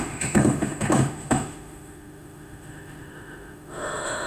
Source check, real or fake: fake